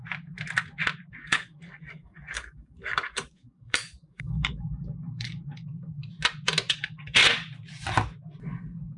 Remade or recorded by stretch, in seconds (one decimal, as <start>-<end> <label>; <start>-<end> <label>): 0.0-1.1 recorded; 1.1-6.0 remade; 6.0-6.7 recorded; 6.7-7.2 remade; 7.2-9.0 recorded